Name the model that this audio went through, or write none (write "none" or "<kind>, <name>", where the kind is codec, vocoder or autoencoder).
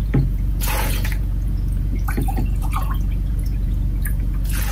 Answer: vocoder, Vocos